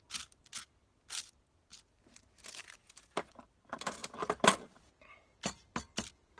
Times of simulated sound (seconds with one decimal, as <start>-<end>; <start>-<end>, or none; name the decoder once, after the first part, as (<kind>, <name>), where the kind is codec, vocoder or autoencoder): none